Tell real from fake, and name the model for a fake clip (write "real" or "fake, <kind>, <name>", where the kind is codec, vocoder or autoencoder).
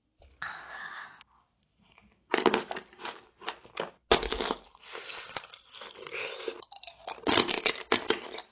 real